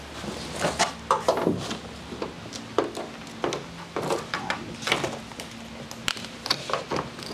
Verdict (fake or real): real